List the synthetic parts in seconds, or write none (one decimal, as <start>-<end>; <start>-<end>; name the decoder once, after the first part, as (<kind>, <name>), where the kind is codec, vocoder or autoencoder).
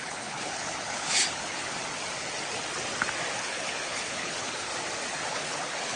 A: 0.0-1.8 (codec, HILCodec); 3.4-4.7; 5.3-6.0